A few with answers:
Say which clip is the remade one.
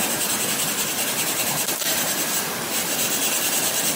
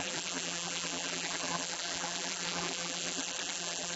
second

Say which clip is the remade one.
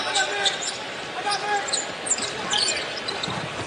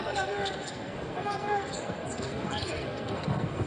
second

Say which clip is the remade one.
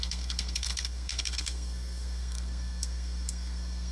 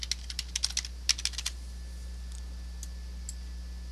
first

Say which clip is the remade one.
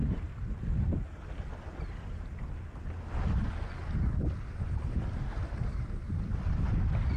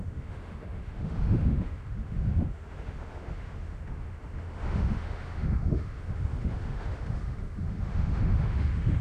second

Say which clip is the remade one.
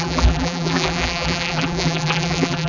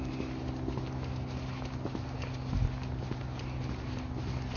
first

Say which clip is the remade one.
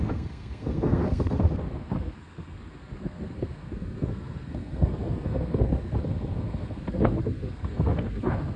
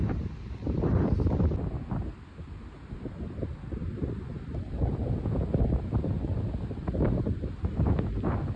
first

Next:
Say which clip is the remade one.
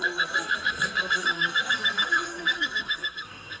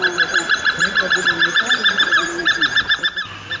first